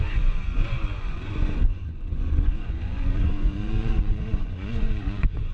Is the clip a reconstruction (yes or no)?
yes